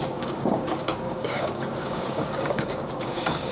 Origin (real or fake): fake